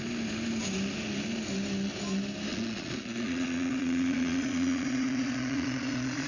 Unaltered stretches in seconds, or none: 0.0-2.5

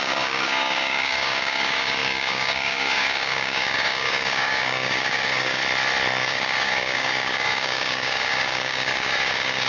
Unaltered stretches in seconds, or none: 5.6-6.2

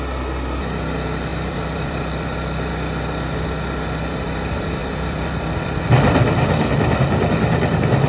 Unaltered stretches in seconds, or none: 0.0-1.3; 2.7-4.8; 6.8-8.1

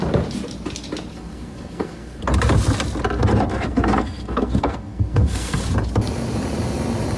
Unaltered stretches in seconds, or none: 0.0-1.1; 2.2-3.5; 5.6-7.2

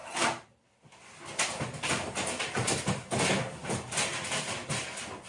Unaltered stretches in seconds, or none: 0.6-3.6; 4.8-5.3